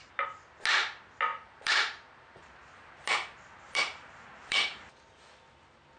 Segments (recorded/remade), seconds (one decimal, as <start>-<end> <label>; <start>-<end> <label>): 0.0-1.3 recorded; 1.3-4.9 remade; 4.9-6.0 recorded